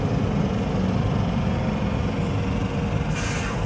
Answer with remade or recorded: recorded